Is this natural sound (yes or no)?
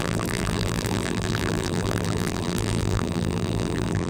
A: no